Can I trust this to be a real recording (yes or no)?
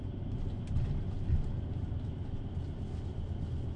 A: yes